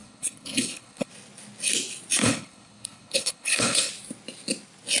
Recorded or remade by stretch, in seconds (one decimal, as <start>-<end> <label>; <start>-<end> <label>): 0.0-1.1 remade; 1.1-2.2 recorded; 2.2-3.9 remade; 3.9-5.0 recorded